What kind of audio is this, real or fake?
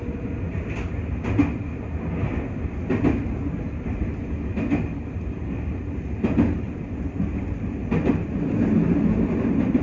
real